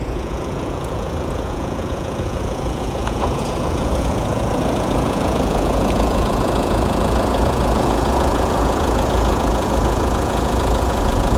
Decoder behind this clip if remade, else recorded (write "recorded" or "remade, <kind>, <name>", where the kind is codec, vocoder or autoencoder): remade, vocoder, Vocos